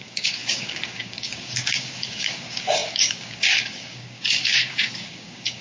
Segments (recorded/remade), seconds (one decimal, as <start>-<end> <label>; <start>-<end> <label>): 0.0-5.6 remade